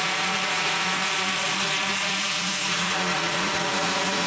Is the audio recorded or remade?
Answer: remade